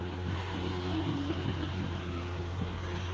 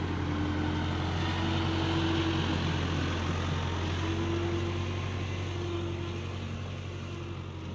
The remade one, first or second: first